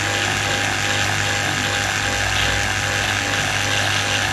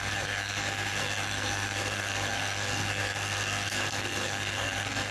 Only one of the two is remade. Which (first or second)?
second